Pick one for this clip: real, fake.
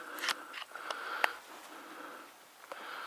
real